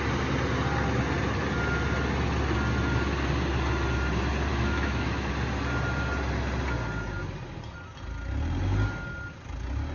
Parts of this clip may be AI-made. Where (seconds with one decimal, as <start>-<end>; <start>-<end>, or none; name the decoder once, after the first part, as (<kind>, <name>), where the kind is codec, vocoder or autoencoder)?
4.5-5.3 (autoencoder, DAC-VAE)